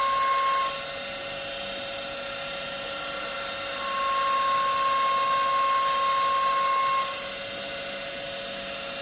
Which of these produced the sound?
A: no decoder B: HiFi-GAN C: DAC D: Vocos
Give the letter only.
A